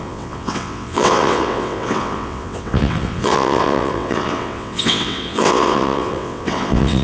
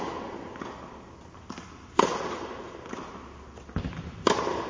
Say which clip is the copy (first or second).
first